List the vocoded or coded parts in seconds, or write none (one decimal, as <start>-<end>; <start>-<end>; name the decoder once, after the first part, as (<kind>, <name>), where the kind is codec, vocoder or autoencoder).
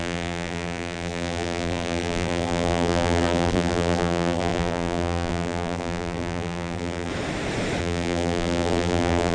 0.0-7.1 (vocoder, BigVGAN v2); 7.8-9.3